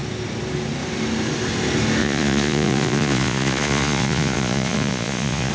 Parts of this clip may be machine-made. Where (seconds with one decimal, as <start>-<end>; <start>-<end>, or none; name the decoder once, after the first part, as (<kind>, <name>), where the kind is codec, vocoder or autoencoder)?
2.0-5.5 (vocoder, Vocos)